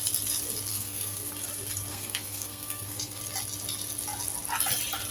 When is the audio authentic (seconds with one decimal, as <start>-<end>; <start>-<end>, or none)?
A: 0.0-0.7; 1.3-1.9; 3.2-5.1